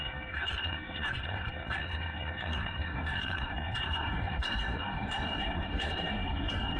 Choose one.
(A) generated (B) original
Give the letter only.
A